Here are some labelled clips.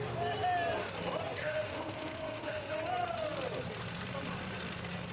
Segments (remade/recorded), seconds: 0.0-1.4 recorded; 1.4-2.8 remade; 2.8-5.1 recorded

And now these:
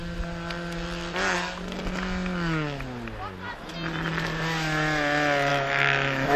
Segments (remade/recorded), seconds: 0.0-5.5 recorded; 5.5-6.4 remade

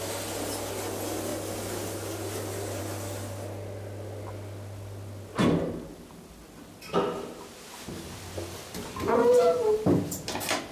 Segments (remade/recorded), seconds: 0.0-10.7 recorded